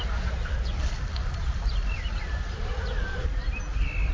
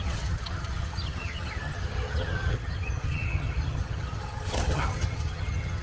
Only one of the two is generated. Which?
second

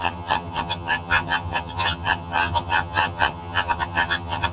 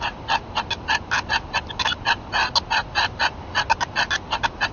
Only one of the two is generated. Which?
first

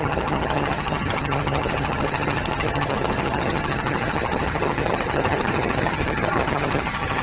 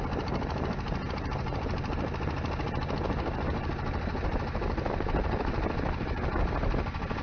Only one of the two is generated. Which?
first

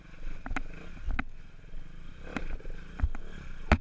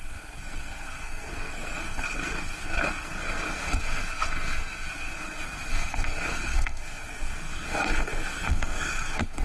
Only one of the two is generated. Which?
second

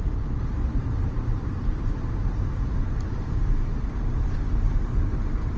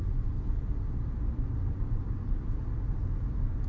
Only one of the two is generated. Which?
first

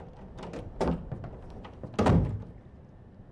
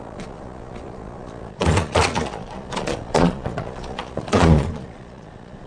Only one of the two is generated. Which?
second